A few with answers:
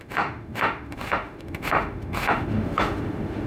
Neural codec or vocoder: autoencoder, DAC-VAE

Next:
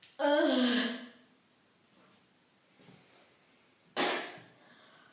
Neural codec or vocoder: none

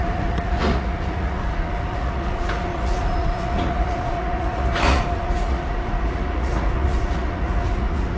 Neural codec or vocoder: vocoder, Vocos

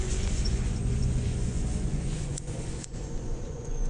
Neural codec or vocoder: vocoder, Vocos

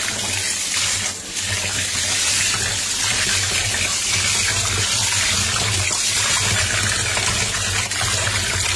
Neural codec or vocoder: none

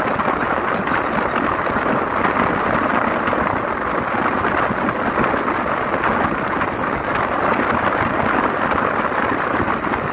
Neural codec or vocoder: none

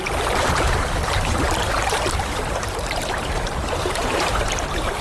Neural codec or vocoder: vocoder, BigVGAN v2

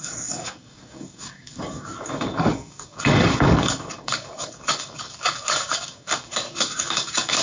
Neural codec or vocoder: codec, DAC